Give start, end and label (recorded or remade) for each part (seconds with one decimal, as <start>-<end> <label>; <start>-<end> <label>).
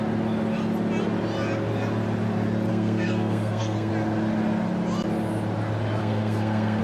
0.0-2.7 recorded; 2.7-3.9 remade; 3.9-6.0 recorded; 6.0-6.8 remade